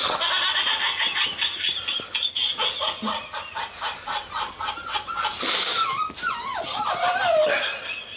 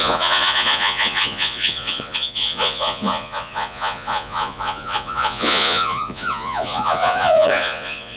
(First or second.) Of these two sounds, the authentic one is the first